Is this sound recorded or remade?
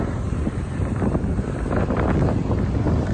recorded